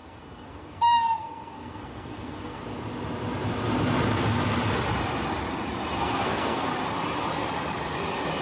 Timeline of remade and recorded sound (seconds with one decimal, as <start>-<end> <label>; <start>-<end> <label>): 0.0-2.6 remade; 2.6-6.0 recorded; 6.0-6.7 remade; 6.7-8.4 recorded